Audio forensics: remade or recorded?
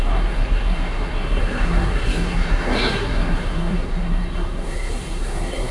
remade